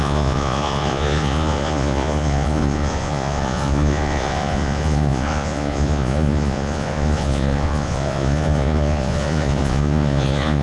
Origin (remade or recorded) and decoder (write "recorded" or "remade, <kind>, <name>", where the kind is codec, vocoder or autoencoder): remade, vocoder, Vocos